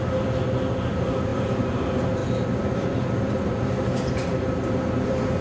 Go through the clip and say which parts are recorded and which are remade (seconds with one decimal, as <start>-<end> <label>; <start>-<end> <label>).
0.0-5.4 recorded

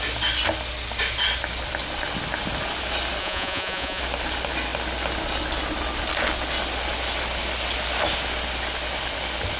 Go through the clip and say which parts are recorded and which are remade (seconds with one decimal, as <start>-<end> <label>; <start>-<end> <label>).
0.0-3.2 recorded; 3.2-4.0 remade; 4.0-9.6 recorded

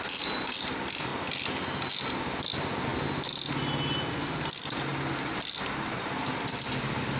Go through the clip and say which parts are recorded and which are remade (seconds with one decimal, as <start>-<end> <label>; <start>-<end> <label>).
0.0-1.1 remade; 1.1-2.1 recorded; 2.1-2.9 remade; 2.9-4.1 recorded; 4.1-4.9 remade; 4.9-6.2 recorded; 6.2-7.2 remade